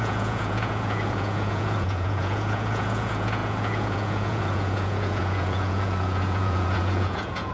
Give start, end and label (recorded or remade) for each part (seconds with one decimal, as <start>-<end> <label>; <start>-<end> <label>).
0.0-7.5 remade